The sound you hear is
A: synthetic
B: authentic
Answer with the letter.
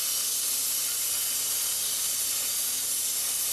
B